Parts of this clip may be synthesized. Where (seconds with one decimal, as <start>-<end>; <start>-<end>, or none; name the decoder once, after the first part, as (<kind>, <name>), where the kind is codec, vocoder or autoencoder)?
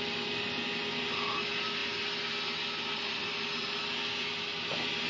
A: none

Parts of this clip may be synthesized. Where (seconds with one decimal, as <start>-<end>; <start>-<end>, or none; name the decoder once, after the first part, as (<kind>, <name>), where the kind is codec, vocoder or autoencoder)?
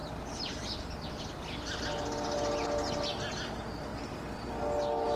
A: none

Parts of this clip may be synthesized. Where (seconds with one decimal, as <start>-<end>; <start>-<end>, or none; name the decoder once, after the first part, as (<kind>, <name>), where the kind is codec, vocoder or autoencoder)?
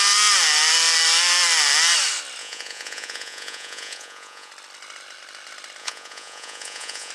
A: 2.4-4.5 (vocoder, Vocos); 5.8-7.1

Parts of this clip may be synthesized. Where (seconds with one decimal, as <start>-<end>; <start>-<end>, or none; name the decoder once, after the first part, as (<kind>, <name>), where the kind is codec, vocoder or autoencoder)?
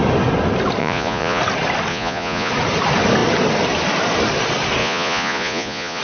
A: 0.8-1.4 (vocoder, Vocos); 1.9-2.5; 4.8-6.0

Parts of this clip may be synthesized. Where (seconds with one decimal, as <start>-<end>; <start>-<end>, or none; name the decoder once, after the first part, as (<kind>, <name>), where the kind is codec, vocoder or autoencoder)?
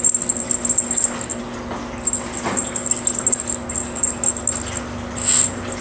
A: none